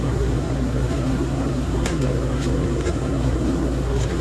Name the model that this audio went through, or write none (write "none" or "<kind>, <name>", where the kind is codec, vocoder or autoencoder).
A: codec, SNAC